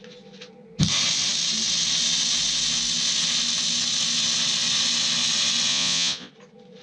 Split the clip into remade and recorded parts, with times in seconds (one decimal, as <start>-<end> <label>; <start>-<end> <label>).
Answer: 0.0-5.7 recorded; 5.7-6.3 remade; 6.3-6.8 recorded